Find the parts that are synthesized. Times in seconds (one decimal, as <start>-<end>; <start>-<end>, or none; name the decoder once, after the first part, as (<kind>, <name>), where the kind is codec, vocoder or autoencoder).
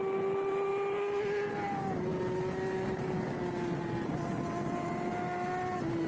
none